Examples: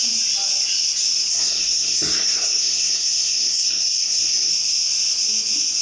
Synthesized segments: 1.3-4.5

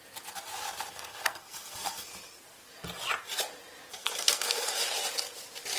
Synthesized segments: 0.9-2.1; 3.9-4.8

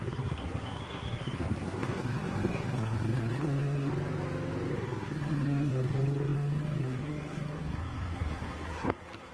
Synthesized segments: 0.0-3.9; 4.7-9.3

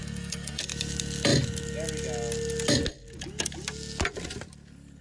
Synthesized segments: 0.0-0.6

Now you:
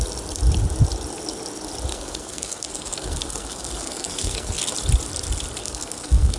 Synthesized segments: 1.9-4.7; 5.6-6.4

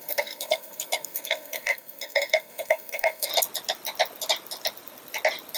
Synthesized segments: 0.0-3.3

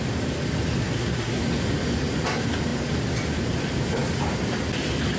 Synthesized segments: 0.8-1.4